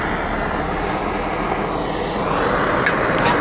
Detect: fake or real real